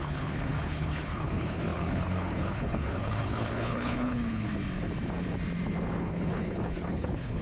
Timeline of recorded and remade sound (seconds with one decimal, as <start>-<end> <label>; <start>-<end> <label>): 0.0-4.5 remade; 4.5-6.0 recorded; 6.0-7.4 remade